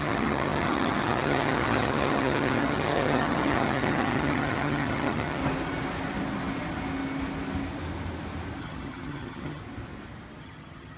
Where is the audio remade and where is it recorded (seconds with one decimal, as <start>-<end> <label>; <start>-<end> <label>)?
0.0-5.4 remade; 5.4-8.6 recorded; 8.6-9.6 remade; 9.6-10.4 recorded; 10.4-11.0 remade

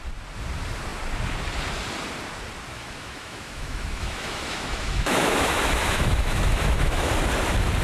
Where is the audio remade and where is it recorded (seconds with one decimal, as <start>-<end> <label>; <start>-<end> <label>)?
0.0-2.7 recorded; 2.7-7.1 remade; 7.1-7.8 recorded

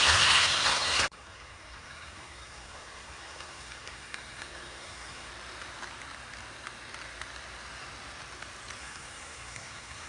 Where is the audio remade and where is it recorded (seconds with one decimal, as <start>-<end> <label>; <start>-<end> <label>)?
0.0-5.3 remade; 5.3-8.8 recorded; 8.8-10.1 remade

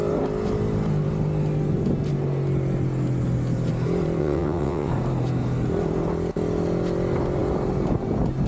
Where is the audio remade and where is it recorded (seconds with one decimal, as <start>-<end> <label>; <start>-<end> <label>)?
0.0-4.2 recorded; 4.2-4.9 remade; 4.9-8.5 recorded

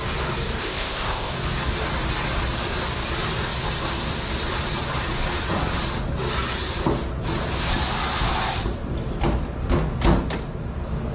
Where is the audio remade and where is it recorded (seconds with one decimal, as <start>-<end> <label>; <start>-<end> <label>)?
0.0-0.6 recorded; 0.6-1.3 remade; 1.3-11.1 recorded

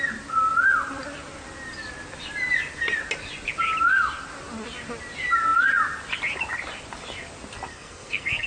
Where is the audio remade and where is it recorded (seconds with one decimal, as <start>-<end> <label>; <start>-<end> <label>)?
0.0-7.7 recorded; 7.7-8.5 remade

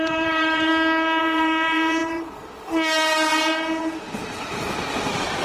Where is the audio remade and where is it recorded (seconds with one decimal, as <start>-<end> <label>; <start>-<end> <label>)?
0.0-0.7 remade; 0.7-1.2 recorded; 1.2-5.4 remade

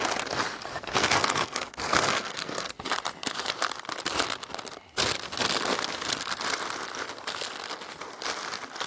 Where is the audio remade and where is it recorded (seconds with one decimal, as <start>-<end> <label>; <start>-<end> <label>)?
0.0-0.7 recorded; 0.7-2.7 remade; 2.7-8.9 recorded